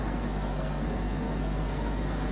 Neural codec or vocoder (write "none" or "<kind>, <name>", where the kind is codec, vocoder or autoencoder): codec, SNAC